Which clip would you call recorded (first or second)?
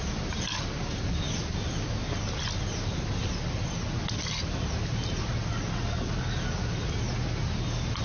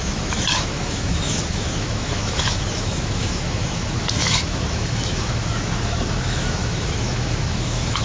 first